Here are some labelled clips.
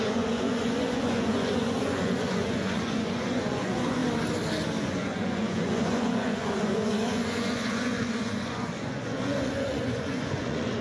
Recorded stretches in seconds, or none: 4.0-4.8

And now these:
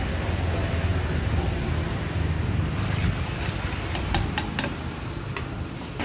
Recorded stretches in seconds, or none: 0.0-6.0

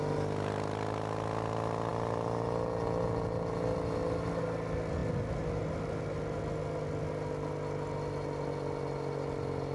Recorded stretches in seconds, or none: 0.0-9.7

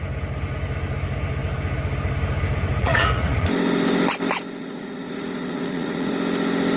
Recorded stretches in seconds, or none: 0.0-2.8; 3.5-4.6; 6.1-6.8

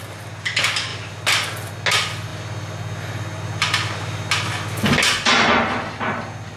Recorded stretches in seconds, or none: 0.0-6.6

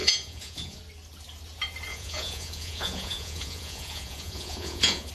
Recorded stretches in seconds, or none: 0.8-1.9

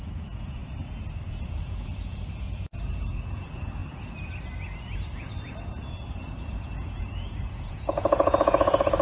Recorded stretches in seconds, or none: 0.6-1.3; 3.8-5.7

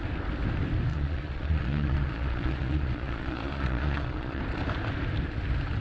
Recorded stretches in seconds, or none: 0.0-0.9; 4.4-5.8